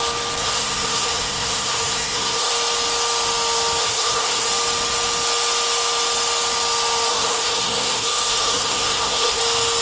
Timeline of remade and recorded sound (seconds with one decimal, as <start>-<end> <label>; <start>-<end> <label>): 0.0-0.4 recorded; 0.4-2.5 remade; 2.5-3.8 recorded; 3.8-4.5 remade; 4.5-7.1 recorded; 7.1-9.4 remade; 9.4-9.8 recorded